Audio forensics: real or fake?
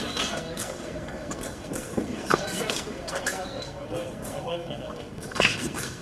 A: fake